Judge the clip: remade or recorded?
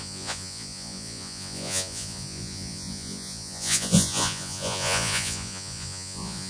remade